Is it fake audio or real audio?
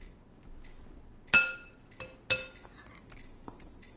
real